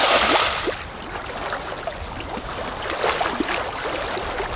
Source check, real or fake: real